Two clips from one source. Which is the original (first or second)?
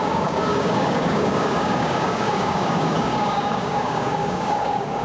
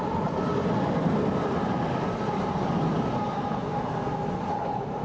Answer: second